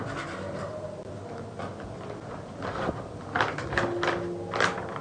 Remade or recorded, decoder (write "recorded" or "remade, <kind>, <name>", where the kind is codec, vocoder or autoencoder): recorded